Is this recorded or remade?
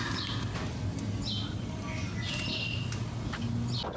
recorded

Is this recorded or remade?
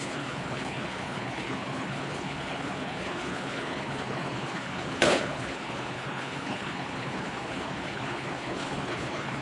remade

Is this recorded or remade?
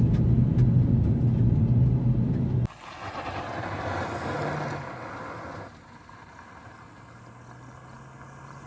recorded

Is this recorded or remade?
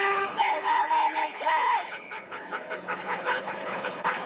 remade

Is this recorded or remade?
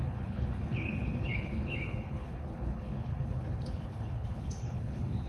remade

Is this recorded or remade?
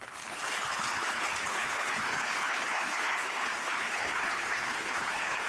remade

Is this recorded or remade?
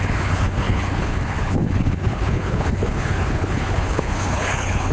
remade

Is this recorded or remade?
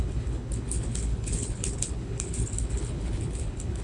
remade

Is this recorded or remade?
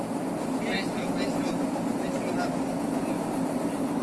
recorded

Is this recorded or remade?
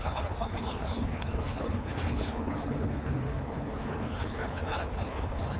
remade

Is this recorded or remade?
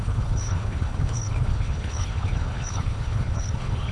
remade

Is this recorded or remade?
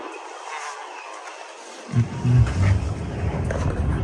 recorded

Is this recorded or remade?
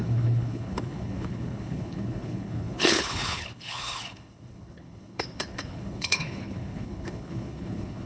remade